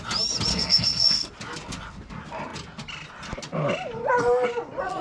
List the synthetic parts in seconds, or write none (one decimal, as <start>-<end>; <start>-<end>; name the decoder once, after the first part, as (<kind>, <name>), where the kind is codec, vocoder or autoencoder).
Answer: 0.5-1.3 (codec, SNAC)